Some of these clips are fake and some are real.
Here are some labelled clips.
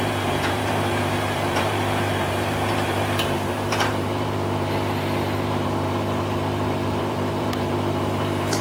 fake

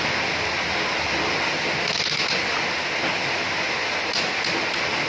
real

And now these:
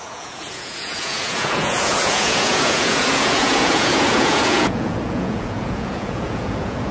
fake